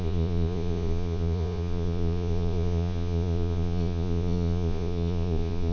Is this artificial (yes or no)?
yes